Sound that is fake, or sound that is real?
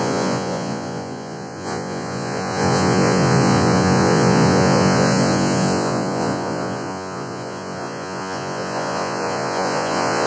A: fake